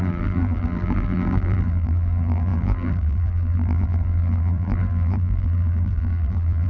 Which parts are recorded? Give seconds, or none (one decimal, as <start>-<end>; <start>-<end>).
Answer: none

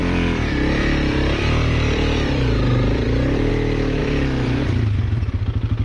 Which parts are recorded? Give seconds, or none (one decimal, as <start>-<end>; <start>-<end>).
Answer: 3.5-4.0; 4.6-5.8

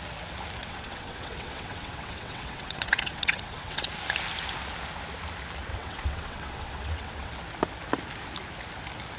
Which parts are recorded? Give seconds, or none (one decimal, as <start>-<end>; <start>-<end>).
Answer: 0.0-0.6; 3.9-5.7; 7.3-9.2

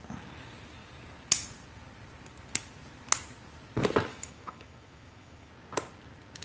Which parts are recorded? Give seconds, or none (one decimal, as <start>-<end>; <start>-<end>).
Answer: 0.0-4.1; 5.5-6.4

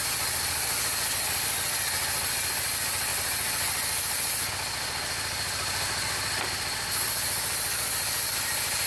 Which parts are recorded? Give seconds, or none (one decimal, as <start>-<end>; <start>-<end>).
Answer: 0.0-8.9

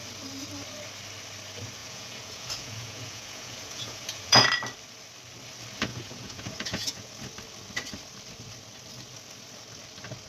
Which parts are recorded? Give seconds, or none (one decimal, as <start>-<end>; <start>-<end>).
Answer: 0.0-1.8; 4.5-5.9; 7.1-10.3